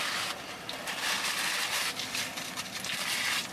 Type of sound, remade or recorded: recorded